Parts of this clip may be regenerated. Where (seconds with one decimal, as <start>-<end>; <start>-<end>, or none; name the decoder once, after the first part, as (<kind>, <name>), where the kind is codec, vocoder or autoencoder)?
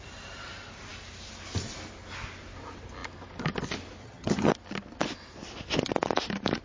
4.0-4.5 (vocoder, HiFi-GAN)